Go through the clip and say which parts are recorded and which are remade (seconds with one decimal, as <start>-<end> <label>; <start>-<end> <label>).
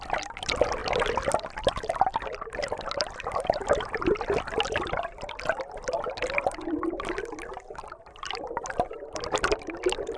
0.0-10.2 recorded